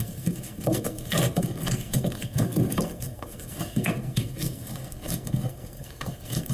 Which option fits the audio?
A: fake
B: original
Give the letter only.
A